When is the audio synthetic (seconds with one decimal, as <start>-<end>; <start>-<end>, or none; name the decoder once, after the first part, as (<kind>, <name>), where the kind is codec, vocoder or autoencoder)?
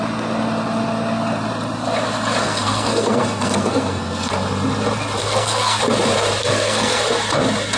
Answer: 2.4-4.3 (codec, SNAC); 5.2-5.8; 6.4-7.0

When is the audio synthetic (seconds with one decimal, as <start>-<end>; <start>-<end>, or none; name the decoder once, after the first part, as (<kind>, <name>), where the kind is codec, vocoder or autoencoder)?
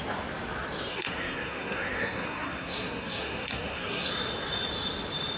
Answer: 0.9-4.1 (codec, SNAC)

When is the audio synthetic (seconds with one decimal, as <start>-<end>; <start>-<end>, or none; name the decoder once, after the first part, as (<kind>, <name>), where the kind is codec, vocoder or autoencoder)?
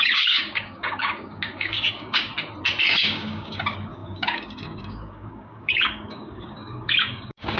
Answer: 0.0-2.3 (codec, DAC); 2.9-7.6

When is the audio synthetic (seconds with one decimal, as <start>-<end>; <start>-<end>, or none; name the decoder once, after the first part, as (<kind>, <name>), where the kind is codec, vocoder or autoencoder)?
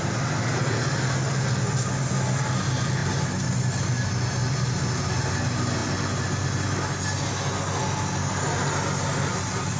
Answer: none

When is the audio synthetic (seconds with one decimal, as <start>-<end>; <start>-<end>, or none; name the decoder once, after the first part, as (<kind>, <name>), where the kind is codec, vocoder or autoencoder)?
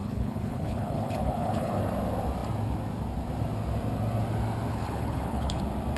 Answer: 0.0-1.8 (codec, HILCodec); 4.7-5.6